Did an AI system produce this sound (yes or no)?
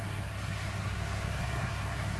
yes